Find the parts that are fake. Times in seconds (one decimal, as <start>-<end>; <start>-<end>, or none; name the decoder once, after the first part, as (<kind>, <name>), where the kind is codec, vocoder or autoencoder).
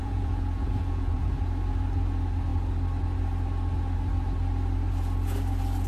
0.0-1.3 (vocoder, Vocos)